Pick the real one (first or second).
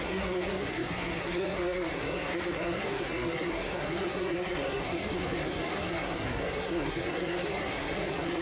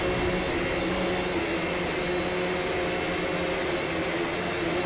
second